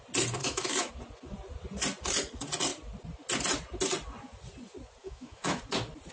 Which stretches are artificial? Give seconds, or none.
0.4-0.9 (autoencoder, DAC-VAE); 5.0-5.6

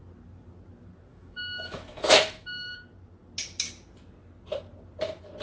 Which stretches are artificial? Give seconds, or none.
1.1-2.7 (autoencoder, DAC-VAE)

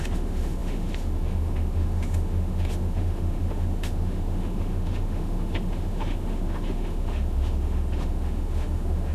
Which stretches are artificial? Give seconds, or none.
0.0-9.1 (autoencoder, DAC-VAE)